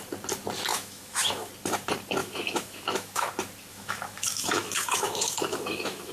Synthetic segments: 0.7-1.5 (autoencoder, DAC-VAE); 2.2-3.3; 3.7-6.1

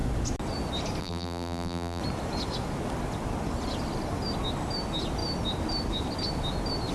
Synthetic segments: 1.0-2.0 (vocoder, BigVGAN v2)

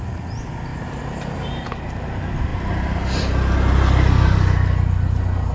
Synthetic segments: 0.7-1.8 (vocoder, BigVGAN v2)

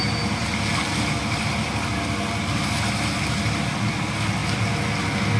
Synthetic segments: none

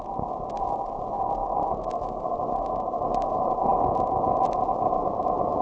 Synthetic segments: none

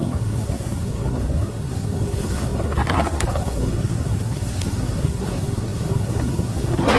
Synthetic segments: 0.0-7.0 (codec, SNAC)